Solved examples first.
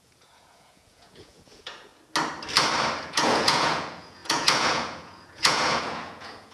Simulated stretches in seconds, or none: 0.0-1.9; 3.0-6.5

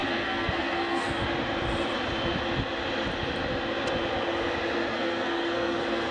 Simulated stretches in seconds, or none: 0.0-1.2; 4.9-6.1

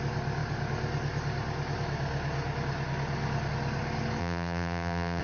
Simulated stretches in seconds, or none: 4.2-5.2